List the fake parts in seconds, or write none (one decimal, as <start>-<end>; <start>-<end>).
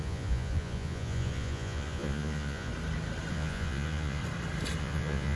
0.0-2.7; 3.3-4.2; 4.8-5.4